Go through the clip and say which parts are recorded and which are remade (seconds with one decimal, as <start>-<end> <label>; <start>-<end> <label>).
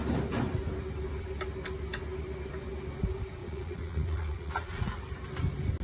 0.0-3.4 recorded; 3.4-5.0 remade; 5.0-5.8 recorded